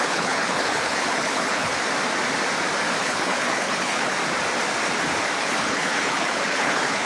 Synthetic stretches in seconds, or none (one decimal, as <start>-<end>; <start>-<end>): 0.0-1.7; 3.0-4.2; 5.4-7.1